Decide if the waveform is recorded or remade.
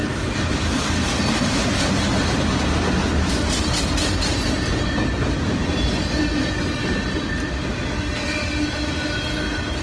recorded